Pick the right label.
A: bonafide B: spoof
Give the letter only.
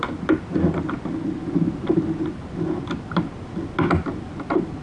A